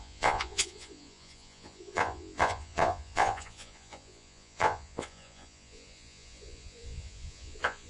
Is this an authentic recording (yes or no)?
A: no